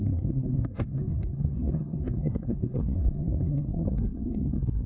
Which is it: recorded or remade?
remade